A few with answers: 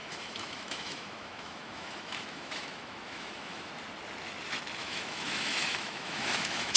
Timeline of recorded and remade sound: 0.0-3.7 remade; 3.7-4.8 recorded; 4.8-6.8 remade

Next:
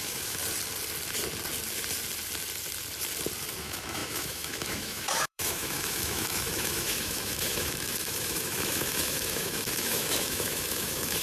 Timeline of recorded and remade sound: 0.0-0.4 remade; 0.4-3.6 recorded; 3.6-11.2 remade

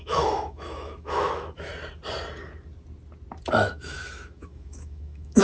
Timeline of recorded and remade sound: 0.0-1.7 remade; 1.7-3.5 recorded; 3.5-5.4 remade

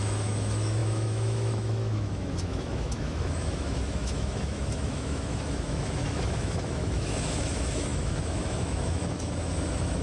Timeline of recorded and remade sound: 0.0-10.0 remade

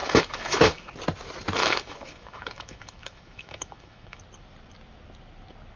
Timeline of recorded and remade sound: 0.0-0.9 remade; 0.9-1.6 recorded; 1.6-4.2 remade; 4.2-5.8 recorded

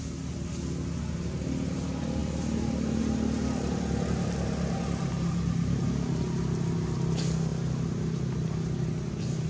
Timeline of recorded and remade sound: 0.0-9.5 recorded

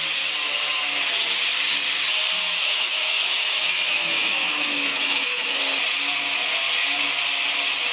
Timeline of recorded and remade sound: 0.0-2.6 recorded; 2.6-5.6 remade; 5.6-7.9 recorded

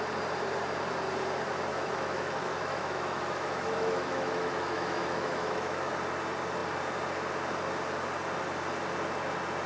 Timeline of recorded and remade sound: 0.0-1.7 recorded; 1.7-5.9 remade; 5.9-9.7 recorded